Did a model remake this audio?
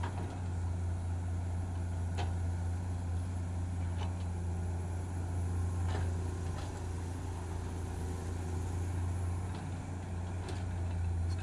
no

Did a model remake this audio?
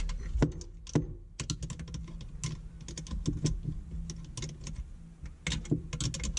no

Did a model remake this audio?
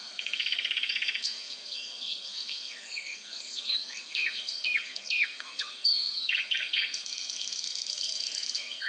yes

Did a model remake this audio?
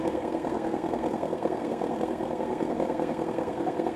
yes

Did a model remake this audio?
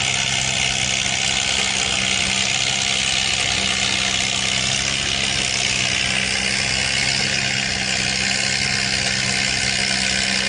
no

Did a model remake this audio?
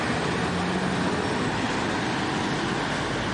no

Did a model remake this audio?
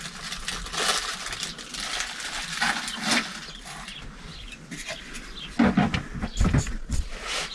no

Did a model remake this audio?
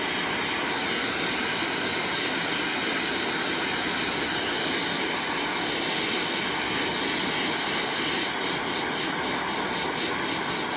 no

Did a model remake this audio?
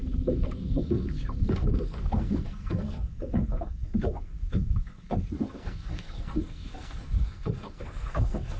yes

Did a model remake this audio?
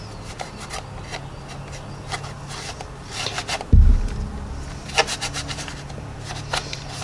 no